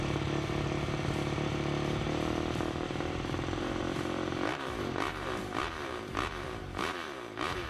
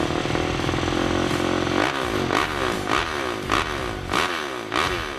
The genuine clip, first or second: second